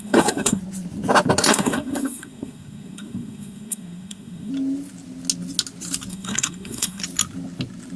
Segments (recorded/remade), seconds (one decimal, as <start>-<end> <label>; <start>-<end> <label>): 0.0-0.6 remade; 0.6-1.5 recorded; 1.5-4.5 remade; 4.5-6.1 recorded; 6.1-7.0 remade; 7.0-8.0 recorded